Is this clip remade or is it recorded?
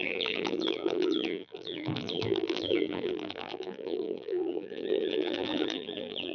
remade